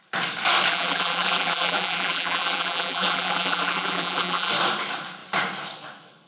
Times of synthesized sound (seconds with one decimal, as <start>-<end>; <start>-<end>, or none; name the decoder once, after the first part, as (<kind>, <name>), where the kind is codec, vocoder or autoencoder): 0.7-4.5 (vocoder, BigVGAN v2)